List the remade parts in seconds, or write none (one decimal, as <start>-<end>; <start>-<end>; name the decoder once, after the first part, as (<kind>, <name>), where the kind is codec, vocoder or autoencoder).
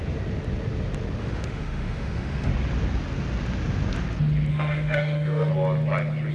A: 1.2-2.5 (autoencoder, DAC-VAE); 4.5-5.5